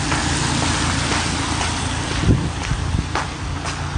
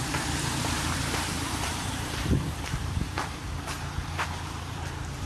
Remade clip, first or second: second